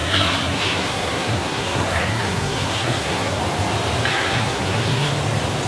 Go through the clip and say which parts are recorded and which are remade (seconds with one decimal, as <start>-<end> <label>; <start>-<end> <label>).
0.0-3.4 remade; 3.4-4.1 recorded; 4.1-5.1 remade; 5.1-5.7 recorded